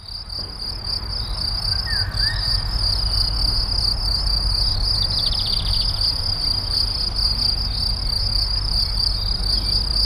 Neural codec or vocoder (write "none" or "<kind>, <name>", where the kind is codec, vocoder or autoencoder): none